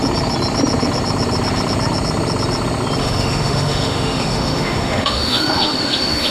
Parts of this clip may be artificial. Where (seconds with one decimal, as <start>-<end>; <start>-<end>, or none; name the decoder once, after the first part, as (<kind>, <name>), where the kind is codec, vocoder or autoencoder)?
3.0-6.3 (autoencoder, DAC-VAE)